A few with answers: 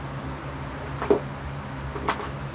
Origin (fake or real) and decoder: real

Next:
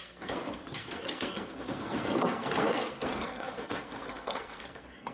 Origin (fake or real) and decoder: fake, codec, SNAC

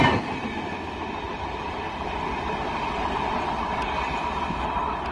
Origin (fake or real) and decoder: real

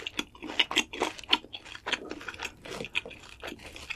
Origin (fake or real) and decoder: real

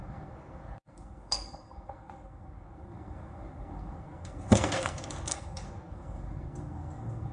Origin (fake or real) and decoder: fake, codec, SNAC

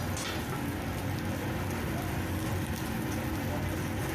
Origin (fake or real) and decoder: real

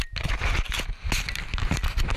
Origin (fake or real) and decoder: real